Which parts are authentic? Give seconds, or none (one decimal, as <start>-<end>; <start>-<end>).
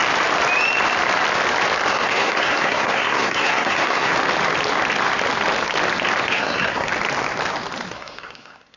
0.0-1.9; 4.1-6.3; 6.9-7.9